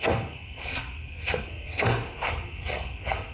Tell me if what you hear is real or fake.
fake